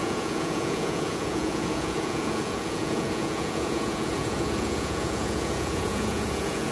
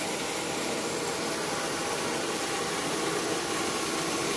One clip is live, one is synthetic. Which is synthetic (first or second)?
first